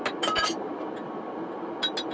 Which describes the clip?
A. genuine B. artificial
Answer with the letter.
A